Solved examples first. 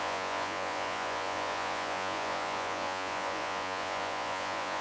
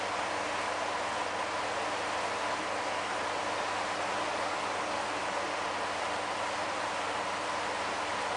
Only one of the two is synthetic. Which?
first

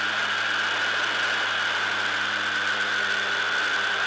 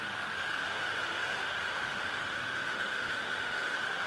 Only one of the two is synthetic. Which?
second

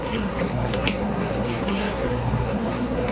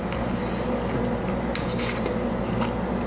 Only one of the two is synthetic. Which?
first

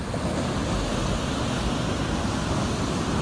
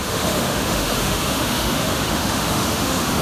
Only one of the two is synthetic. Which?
second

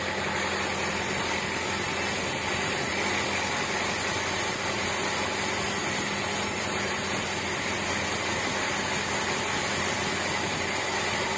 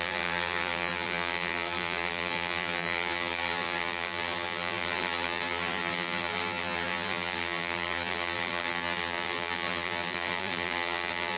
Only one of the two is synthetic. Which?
second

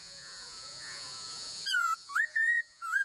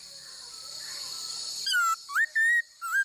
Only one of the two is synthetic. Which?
first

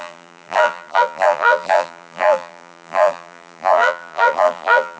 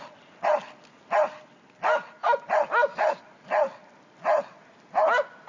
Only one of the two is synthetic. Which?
first